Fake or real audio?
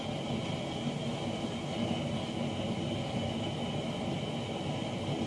real